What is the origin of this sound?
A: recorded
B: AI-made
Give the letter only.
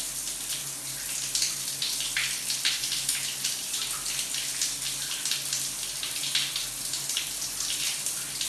A